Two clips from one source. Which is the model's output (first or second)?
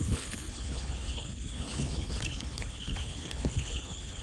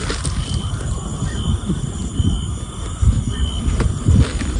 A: first